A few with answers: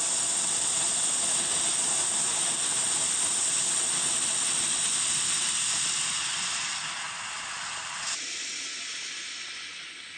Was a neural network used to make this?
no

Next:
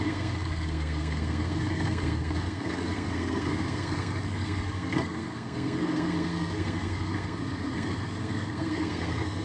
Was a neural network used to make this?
yes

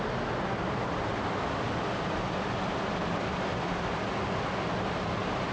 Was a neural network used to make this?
no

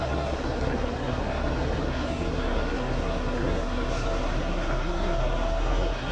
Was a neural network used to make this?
yes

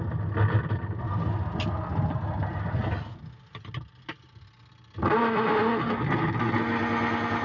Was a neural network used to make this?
no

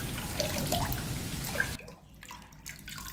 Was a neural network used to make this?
no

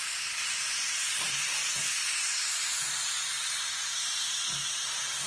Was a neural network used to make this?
no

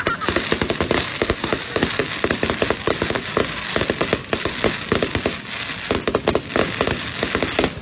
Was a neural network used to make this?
no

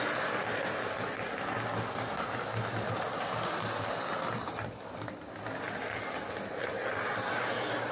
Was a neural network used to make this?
no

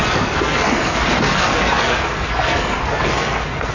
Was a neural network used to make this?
yes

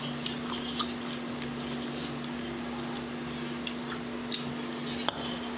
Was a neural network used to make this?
no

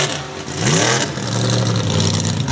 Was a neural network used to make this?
no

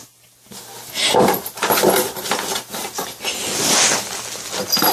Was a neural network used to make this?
no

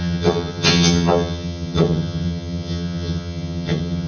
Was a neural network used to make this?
yes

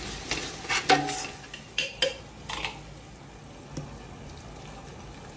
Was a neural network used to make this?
no